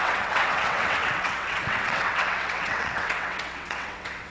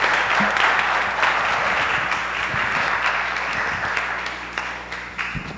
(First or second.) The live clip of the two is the second